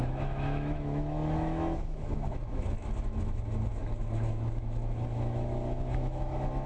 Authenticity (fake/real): fake